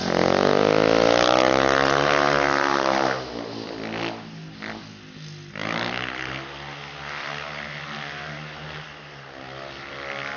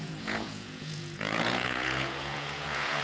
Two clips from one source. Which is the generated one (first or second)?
second